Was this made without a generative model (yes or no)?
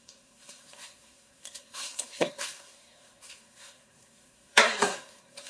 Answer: no